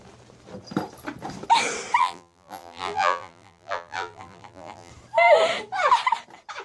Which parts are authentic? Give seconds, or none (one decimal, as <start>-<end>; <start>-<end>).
0.0-2.0; 4.9-6.6